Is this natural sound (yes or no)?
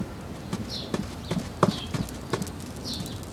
yes